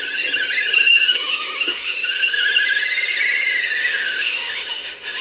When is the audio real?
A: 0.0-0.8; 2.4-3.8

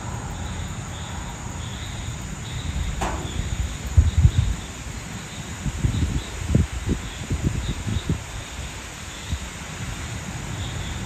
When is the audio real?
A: 0.0-1.7; 2.2-7.9; 8.4-11.1

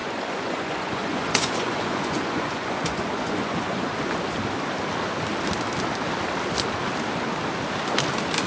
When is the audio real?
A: 3.9-8.5

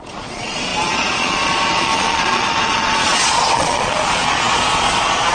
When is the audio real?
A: none

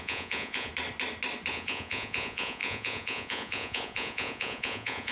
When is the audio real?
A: 0.7-1.5

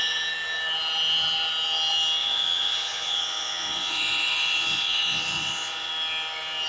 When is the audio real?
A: 0.0-2.2; 5.9-6.7

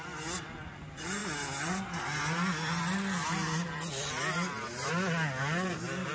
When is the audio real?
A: 0.0-6.1